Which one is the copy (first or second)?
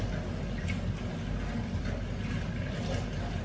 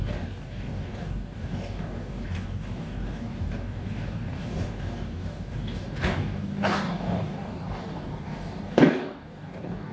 second